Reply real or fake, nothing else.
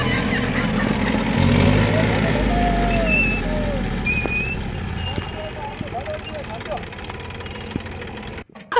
real